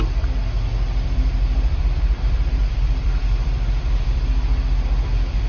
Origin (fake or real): fake